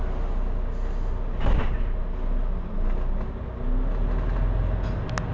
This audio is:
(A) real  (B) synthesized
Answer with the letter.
A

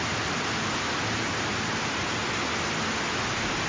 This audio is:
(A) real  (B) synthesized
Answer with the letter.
A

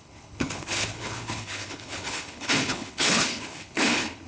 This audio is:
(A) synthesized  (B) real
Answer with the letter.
A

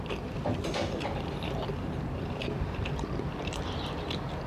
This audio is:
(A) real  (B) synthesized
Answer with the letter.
B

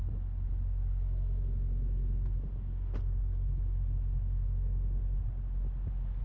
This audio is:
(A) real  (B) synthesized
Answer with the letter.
A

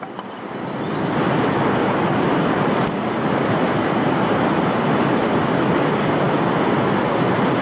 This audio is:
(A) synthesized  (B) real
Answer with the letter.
B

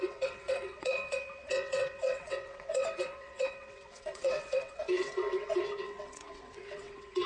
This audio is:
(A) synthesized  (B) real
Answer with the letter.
A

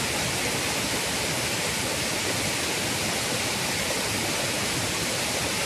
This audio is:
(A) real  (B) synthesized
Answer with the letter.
A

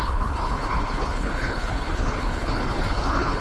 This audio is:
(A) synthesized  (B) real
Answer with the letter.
A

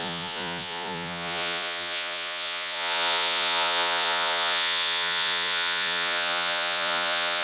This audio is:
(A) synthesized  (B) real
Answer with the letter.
A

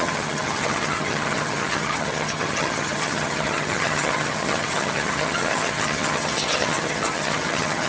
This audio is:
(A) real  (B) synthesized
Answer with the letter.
B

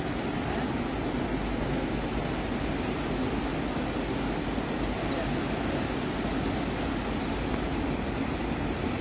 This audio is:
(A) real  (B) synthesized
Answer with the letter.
A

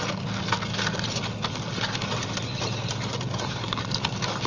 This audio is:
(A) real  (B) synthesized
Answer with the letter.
A